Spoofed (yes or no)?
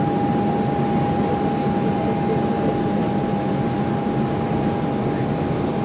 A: no